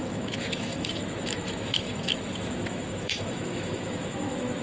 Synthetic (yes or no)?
yes